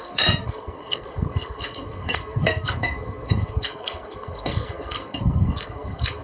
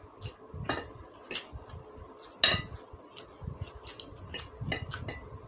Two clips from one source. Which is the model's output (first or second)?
first